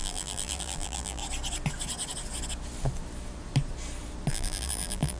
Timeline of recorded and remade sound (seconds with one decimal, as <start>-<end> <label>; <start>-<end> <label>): 0.0-1.2 remade; 1.2-4.3 recorded; 4.3-5.2 remade